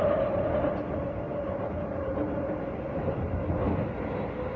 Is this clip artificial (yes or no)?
no